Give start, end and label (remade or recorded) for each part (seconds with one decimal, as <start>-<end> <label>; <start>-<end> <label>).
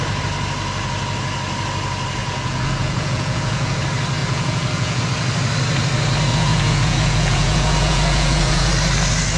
0.0-2.2 recorded; 2.2-3.8 remade; 3.8-4.2 recorded; 4.2-5.0 remade; 5.0-6.3 recorded; 6.3-8.7 remade; 8.7-9.4 recorded